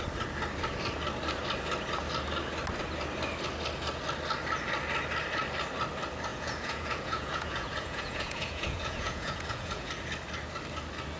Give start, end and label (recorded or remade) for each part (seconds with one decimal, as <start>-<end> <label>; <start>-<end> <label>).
0.0-6.3 recorded; 6.3-9.9 remade; 9.9-11.2 recorded